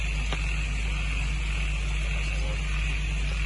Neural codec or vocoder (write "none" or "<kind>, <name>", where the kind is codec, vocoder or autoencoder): none